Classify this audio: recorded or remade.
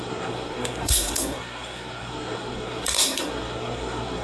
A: remade